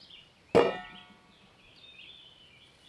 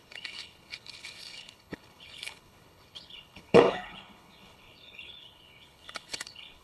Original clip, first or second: first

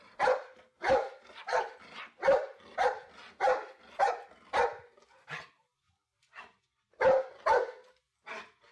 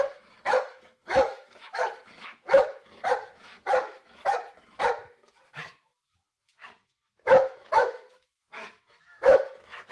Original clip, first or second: first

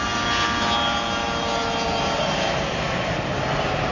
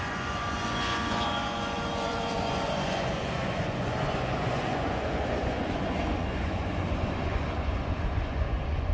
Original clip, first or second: first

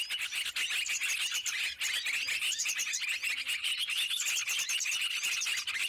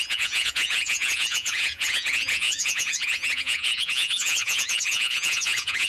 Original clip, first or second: first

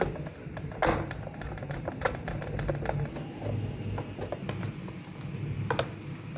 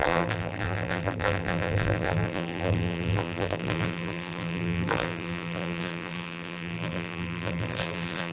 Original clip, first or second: first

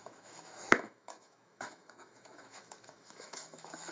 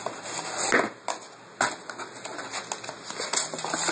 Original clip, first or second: second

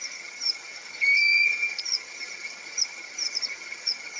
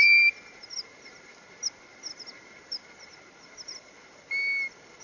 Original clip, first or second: second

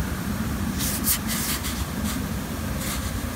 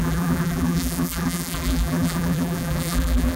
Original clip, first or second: first